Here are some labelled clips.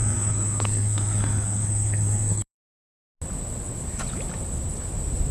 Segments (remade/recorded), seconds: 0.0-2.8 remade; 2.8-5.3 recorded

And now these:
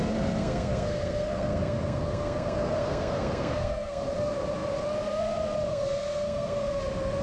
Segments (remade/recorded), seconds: 0.0-0.4 recorded; 0.4-4.1 remade; 4.1-5.7 recorded; 5.7-6.8 remade; 6.8-7.2 recorded

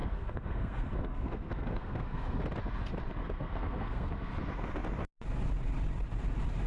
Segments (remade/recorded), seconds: 0.0-2.4 remade; 2.4-3.2 recorded; 3.2-4.3 remade; 4.3-6.7 recorded